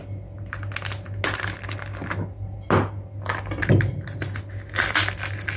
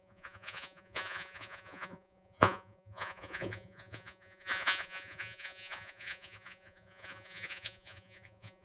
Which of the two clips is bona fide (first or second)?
first